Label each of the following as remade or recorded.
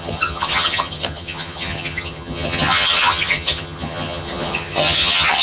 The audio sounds remade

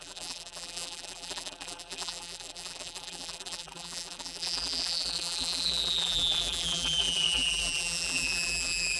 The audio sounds remade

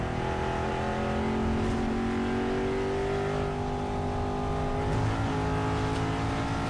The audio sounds recorded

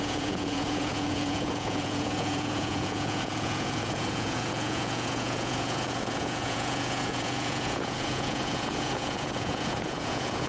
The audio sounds remade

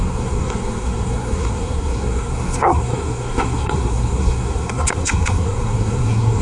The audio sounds remade